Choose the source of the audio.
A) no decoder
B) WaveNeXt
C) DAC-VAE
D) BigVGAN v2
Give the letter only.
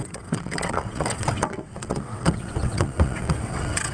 B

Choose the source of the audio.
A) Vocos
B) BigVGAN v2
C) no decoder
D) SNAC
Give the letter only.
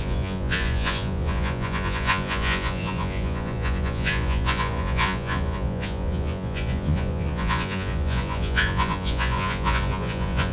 A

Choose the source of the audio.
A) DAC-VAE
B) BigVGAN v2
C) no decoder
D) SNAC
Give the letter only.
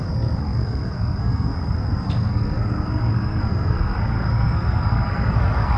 D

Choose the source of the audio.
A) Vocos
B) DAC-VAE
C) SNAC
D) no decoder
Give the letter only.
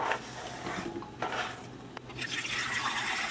D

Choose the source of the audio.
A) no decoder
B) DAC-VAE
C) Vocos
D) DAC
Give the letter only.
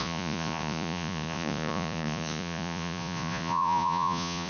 C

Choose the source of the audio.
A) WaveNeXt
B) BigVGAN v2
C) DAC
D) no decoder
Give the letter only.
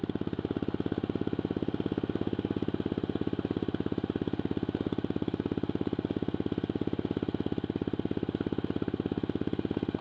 D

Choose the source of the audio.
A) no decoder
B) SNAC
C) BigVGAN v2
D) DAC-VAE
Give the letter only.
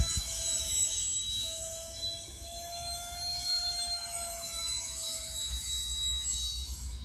D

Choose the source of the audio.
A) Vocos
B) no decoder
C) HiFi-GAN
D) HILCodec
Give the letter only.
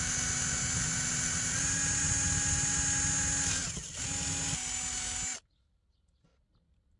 B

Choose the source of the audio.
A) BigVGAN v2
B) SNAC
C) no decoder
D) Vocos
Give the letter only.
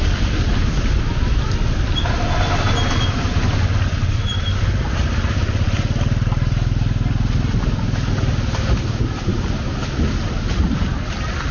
C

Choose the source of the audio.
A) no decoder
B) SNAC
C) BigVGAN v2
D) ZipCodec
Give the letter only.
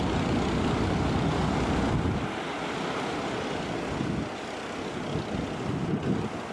A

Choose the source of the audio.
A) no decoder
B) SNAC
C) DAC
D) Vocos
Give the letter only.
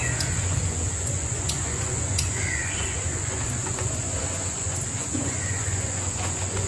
D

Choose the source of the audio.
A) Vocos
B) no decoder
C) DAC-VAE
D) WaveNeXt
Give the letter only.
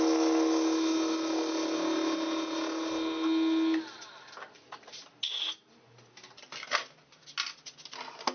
B